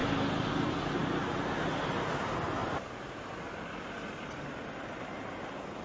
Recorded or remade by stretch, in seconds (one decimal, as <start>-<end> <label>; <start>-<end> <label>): 0.0-0.5 remade; 0.5-2.6 recorded; 2.6-4.6 remade; 4.6-5.8 recorded